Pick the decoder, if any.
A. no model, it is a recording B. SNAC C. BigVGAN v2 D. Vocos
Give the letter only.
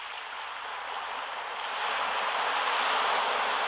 A